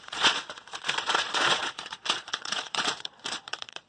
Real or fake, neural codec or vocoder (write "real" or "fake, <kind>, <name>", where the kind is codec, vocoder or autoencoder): fake, vocoder, Vocos